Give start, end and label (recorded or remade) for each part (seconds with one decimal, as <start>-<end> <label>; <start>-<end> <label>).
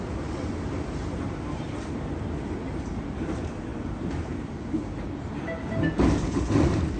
0.0-3.7 recorded; 3.7-5.3 remade; 5.3-7.0 recorded